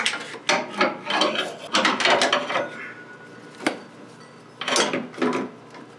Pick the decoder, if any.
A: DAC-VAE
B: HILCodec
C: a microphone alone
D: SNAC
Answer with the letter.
C